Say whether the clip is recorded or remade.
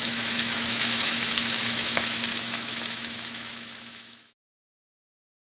remade